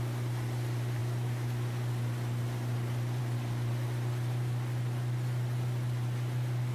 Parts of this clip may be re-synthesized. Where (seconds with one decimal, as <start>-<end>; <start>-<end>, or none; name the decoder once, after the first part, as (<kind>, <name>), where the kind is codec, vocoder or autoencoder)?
none